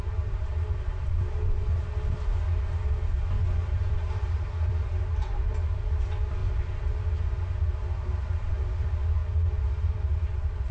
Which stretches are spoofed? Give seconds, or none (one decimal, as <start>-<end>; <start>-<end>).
0.0-1.7; 3.8-6.4; 8.5-9.2; 9.9-10.7